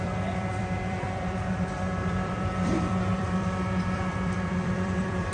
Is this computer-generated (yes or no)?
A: yes